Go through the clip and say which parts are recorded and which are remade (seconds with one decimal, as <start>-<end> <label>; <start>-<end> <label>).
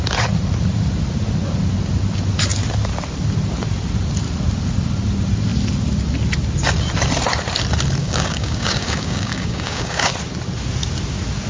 0.0-8.0 recorded; 8.0-10.1 remade; 10.1-11.5 recorded